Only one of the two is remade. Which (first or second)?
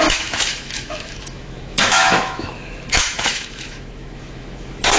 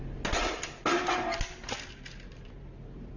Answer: first